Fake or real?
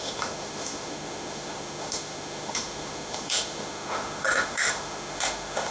fake